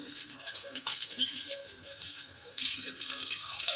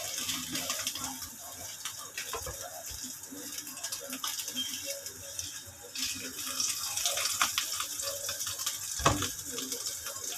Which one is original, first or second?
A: second